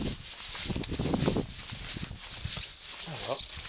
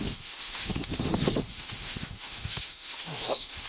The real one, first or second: first